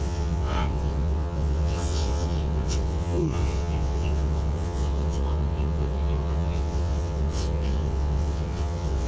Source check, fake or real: fake